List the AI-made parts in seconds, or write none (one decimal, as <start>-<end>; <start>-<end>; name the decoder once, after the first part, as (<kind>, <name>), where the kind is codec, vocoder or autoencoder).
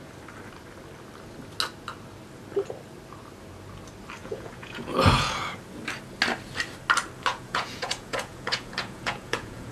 4.2-5.4 (vocoder, Vocos); 7.3-9.7